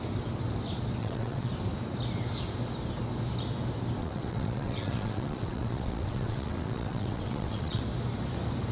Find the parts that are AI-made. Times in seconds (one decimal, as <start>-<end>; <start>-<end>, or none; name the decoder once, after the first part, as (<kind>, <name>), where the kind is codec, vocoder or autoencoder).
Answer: 1.0-1.5 (vocoder, WaveNeXt); 4.0-7.8